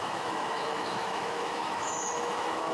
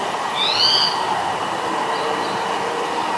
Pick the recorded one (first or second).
second